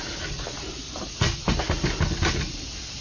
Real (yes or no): yes